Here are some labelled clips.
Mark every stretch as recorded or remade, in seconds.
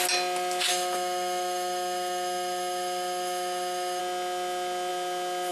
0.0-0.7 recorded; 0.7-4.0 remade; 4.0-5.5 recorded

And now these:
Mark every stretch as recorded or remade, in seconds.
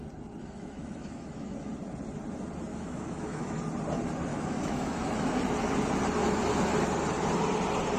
0.0-0.4 recorded; 0.4-1.7 remade; 1.7-2.7 recorded; 2.7-3.6 remade; 3.6-4.3 recorded; 4.3-5.4 remade; 5.4-8.0 recorded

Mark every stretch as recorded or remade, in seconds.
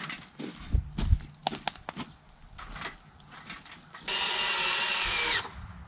0.0-5.9 recorded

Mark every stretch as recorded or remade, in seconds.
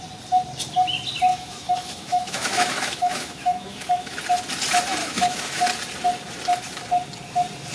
0.0-1.3 recorded; 1.3-4.1 remade; 4.1-5.0 recorded; 5.0-5.6 remade; 5.6-7.7 recorded